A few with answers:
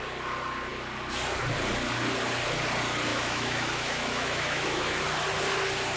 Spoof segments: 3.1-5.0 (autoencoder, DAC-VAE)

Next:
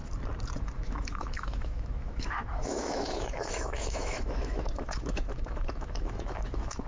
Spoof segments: 0.6-6.9 (autoencoder, DAC-VAE)

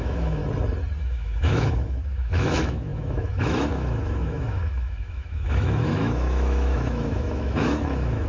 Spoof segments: 0.0-0.4 (autoencoder, DAC-VAE); 1.0-8.3

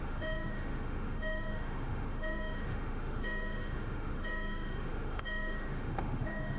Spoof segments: 0.0-6.6 (autoencoder, DAC-VAE)

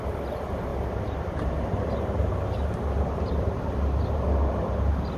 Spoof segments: none

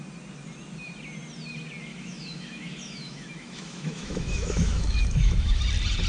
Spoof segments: 1.9-5.6 (autoencoder, DAC-VAE)

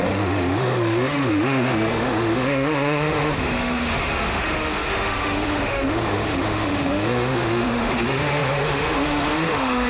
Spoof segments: 0.0-9.9 (autoencoder, DAC-VAE)

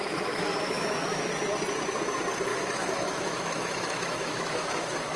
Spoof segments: 0.0-1.3 (autoencoder, DAC-VAE); 2.5-5.2